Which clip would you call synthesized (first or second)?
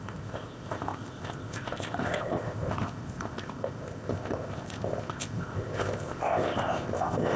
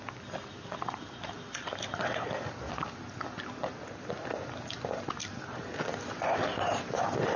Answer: first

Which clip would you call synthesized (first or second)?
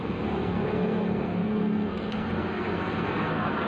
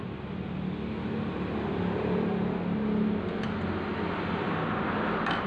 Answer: first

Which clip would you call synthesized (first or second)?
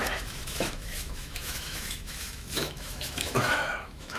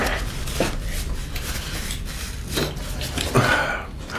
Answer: first